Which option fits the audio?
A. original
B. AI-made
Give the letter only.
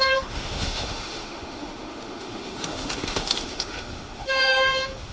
B